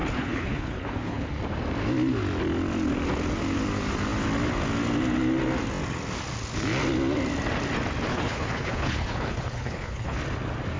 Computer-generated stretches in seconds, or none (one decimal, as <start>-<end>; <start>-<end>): 0.0-1.3; 8.1-10.2